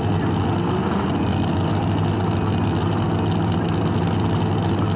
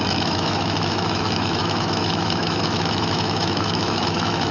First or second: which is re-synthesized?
second